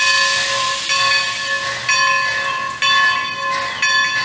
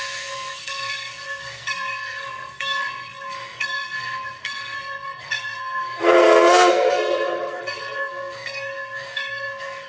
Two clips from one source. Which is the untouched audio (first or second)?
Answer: first